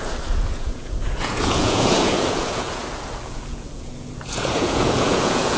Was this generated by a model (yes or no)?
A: yes